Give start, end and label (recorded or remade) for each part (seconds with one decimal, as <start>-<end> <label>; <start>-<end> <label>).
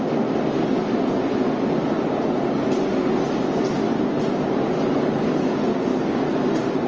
0.0-6.9 recorded